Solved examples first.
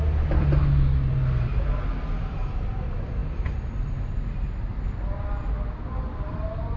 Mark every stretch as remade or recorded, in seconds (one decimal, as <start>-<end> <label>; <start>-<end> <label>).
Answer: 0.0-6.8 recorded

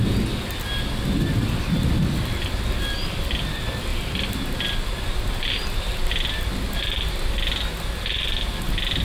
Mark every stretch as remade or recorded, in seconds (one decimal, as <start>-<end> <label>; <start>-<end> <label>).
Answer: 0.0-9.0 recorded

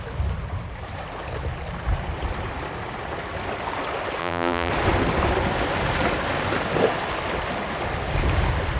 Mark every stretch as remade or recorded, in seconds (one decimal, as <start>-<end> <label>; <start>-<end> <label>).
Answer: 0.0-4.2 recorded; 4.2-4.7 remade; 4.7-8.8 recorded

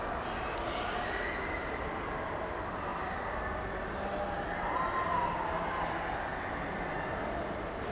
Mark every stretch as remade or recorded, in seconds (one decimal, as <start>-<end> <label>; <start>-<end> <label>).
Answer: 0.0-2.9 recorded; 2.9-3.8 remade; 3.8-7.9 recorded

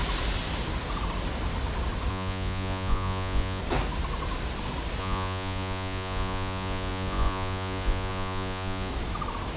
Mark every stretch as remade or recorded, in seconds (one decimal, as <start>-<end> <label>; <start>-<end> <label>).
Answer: 0.0-2.1 recorded; 2.1-3.6 remade; 3.6-5.0 recorded; 5.0-8.9 remade; 8.9-9.6 recorded

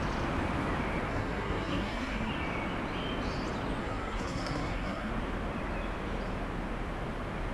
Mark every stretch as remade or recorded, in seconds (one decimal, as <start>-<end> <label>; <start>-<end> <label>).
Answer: 0.0-1.1 recorded; 1.1-2.3 remade; 2.3-3.8 recorded; 3.8-5.1 remade; 5.1-7.5 recorded

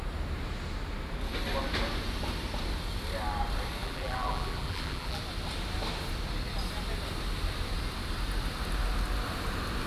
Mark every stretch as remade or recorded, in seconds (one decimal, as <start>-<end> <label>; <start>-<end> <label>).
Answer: 0.0-3.8 recorded; 3.8-5.2 remade; 5.2-9.9 recorded

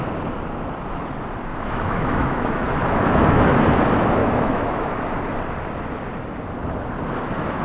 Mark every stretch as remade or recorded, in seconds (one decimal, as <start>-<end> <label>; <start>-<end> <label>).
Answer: 0.0-1.5 recorded; 1.5-3.5 remade; 3.5-4.2 recorded; 4.2-5.0 remade; 5.0-7.6 recorded